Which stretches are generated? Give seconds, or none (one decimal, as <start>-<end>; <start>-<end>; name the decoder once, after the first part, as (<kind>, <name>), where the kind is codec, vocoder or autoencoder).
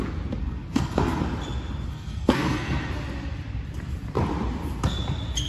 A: 0.4-1.2 (codec, SNAC); 1.9-2.9